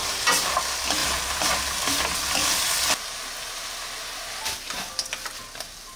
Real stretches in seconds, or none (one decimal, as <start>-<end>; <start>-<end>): 0.5-1.0; 1.5-6.0